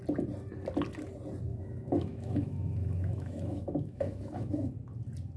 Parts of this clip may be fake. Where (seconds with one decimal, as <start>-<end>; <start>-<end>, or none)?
1.5-4.7